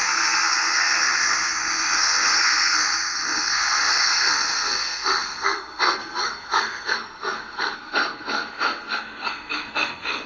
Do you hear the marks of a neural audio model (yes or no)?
yes